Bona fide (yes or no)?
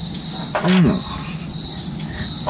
yes